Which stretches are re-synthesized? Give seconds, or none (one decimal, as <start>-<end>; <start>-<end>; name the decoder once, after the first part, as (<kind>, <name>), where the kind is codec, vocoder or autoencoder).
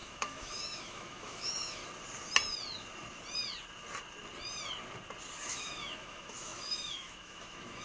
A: 0.0-1.8 (autoencoder, DAC-VAE); 5.5-7.8